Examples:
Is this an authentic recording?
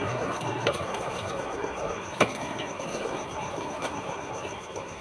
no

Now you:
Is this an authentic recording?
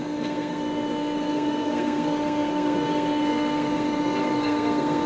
no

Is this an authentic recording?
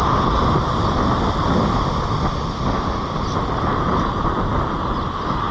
yes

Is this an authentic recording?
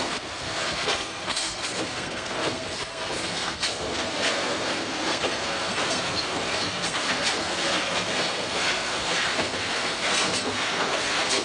no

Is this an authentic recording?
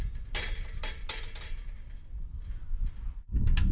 yes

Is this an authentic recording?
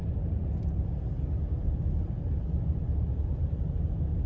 yes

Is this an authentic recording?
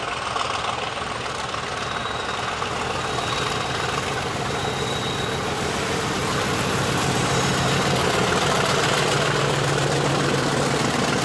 yes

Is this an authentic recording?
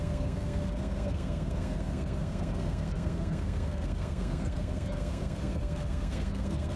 no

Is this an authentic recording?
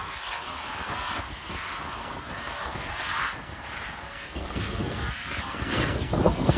no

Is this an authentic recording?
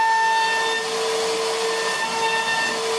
yes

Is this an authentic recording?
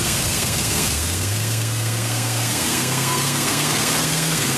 no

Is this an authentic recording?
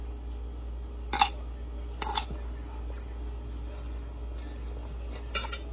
yes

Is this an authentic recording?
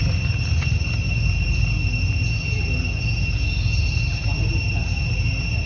yes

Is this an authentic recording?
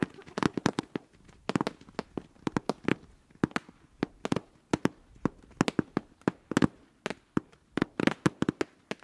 yes